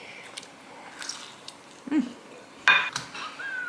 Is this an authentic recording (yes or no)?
yes